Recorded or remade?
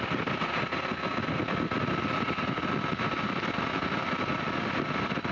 recorded